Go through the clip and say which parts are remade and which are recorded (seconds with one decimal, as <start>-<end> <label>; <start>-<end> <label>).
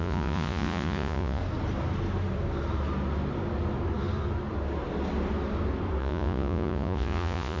0.0-1.4 remade; 1.4-6.0 recorded; 6.0-7.6 remade